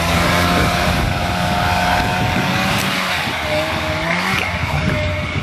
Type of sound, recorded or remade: remade